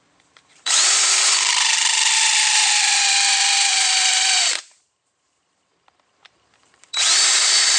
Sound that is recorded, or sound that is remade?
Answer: remade